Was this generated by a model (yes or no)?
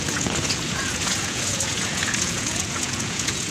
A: yes